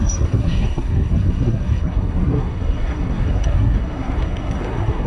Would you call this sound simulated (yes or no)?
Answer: yes